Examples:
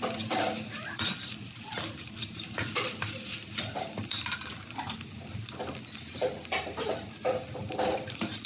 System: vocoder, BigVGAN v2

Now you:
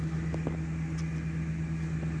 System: none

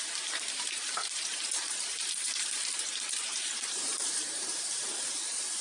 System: vocoder, BigVGAN v2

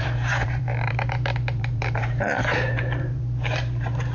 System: vocoder, BigVGAN v2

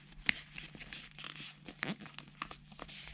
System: vocoder, BigVGAN v2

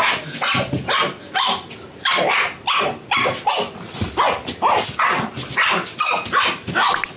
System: none